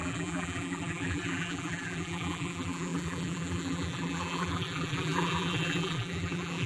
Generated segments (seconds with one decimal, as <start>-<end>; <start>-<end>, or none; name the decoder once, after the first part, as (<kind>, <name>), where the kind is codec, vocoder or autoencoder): 0.0-6.7 (vocoder, BigVGAN v2)